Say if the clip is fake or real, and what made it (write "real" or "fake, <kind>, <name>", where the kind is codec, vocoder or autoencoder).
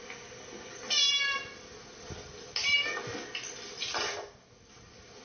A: real